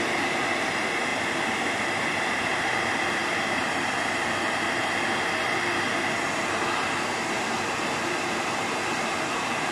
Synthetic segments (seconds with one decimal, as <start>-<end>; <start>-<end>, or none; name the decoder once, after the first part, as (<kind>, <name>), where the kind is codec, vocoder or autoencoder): 0.0-3.2 (vocoder, BigVGAN v2); 7.3-9.7